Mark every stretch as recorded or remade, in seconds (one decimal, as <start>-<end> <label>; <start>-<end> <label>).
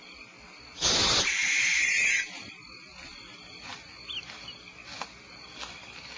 0.0-6.2 recorded